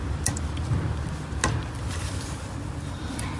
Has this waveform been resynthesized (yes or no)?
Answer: no